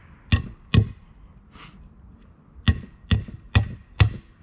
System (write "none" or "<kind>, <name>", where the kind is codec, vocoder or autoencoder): none